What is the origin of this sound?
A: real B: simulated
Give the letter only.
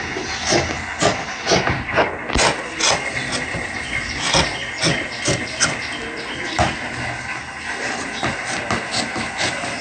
A